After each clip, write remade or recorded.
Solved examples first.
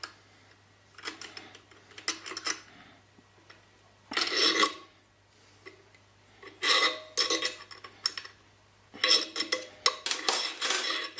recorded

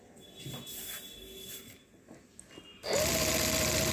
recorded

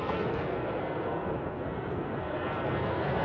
remade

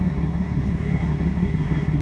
remade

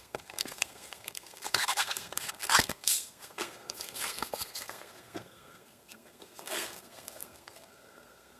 remade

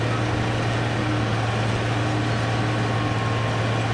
recorded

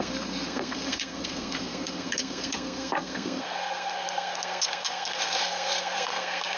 remade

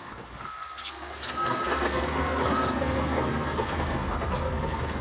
remade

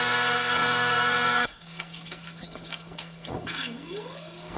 remade